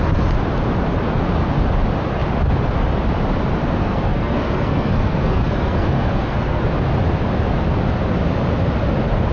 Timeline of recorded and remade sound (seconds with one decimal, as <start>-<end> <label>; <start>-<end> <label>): 0.0-3.8 recorded; 3.8-6.6 remade; 6.6-9.3 recorded